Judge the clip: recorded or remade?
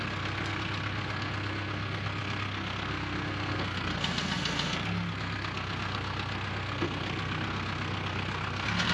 remade